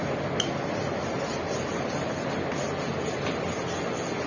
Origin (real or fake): real